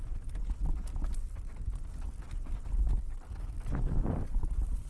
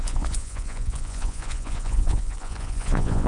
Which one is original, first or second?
first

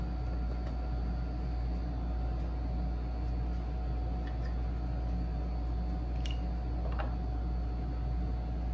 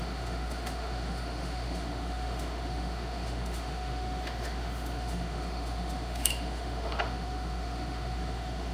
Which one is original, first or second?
first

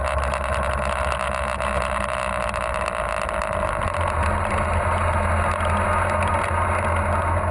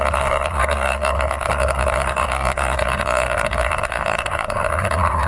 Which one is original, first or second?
first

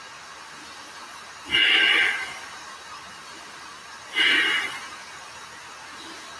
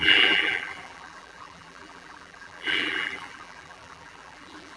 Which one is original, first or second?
first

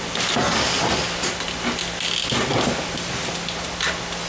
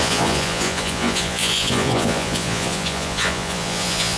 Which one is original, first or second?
first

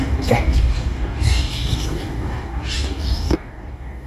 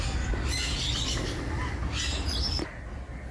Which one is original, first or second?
second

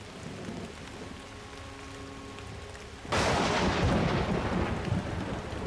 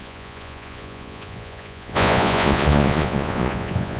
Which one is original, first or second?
first